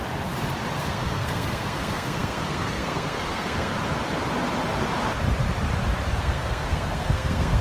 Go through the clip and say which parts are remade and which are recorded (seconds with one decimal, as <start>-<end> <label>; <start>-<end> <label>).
0.0-0.8 recorded; 0.8-3.7 remade; 3.7-6.2 recorded; 6.2-7.6 remade